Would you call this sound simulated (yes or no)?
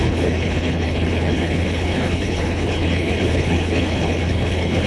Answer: yes